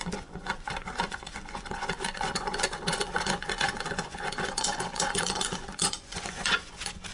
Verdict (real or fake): fake